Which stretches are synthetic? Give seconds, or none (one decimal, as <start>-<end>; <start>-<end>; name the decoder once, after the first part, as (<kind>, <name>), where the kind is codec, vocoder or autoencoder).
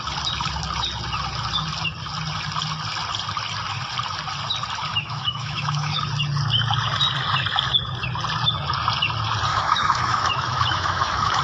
4.9-6.0 (autoencoder, DAC-VAE); 9.5-11.4